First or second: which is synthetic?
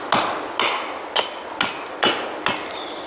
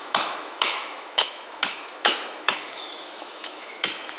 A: second